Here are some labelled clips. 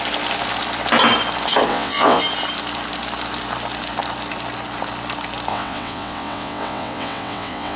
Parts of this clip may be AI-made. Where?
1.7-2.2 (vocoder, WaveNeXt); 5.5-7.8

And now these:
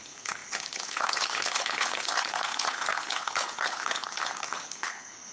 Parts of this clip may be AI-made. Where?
0.0-5.3 (codec, HILCodec)

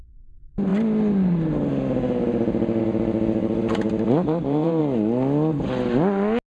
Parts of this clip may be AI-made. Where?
3.4-4.8 (vocoder, BigVGAN v2)